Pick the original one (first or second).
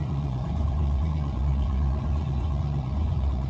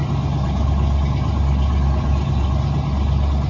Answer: second